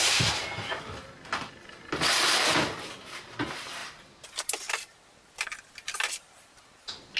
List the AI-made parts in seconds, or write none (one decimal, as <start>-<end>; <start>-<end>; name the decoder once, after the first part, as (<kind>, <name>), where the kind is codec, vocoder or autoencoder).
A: none